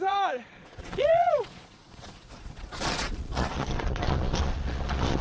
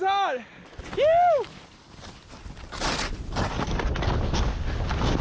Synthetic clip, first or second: first